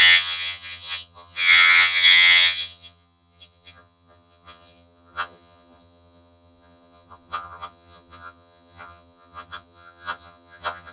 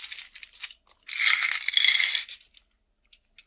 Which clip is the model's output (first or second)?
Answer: first